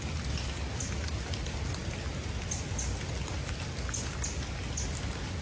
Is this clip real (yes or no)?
yes